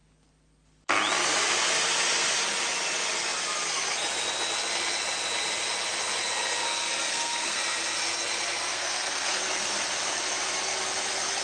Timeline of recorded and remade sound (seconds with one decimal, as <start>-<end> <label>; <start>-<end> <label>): 0.0-7.1 recorded; 7.1-7.6 remade; 7.6-8.7 recorded; 8.7-9.4 remade; 9.4-11.4 recorded